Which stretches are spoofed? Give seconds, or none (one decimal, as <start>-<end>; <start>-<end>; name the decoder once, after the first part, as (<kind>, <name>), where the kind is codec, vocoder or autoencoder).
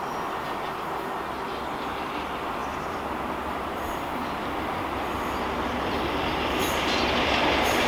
6.3-7.1 (vocoder, BigVGAN v2)